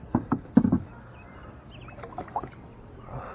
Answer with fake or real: real